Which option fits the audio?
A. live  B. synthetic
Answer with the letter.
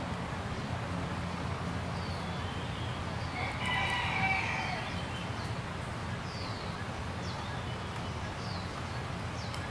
A